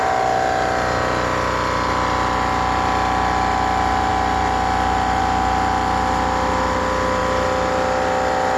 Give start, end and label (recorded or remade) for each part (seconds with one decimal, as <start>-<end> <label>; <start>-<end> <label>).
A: 0.0-8.6 recorded